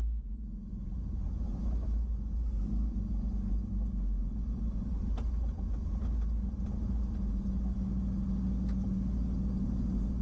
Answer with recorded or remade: recorded